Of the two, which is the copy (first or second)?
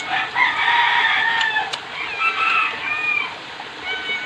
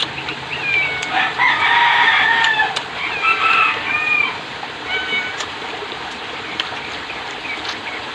second